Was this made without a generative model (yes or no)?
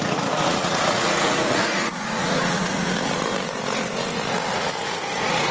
no